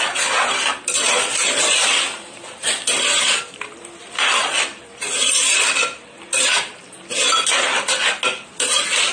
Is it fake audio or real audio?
real